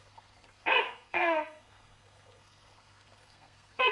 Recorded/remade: remade